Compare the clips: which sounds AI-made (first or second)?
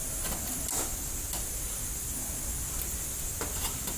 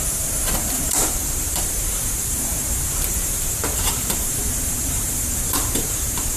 second